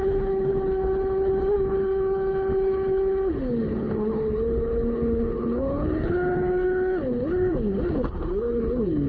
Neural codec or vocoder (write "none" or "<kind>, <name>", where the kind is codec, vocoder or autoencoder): codec, HILCodec